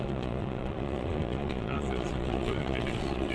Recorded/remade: remade